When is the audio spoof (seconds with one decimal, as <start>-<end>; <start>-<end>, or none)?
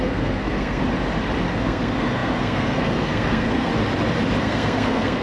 0.0-0.8; 1.5-3.7; 4.4-5.2